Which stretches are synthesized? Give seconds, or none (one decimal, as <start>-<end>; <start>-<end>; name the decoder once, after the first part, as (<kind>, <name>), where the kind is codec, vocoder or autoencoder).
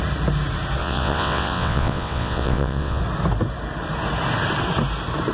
0.8-3.0 (vocoder, WaveNeXt)